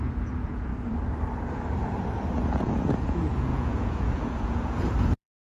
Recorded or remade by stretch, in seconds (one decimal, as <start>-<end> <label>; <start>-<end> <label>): 0.0-0.7 remade; 0.7-2.5 recorded; 2.5-5.6 remade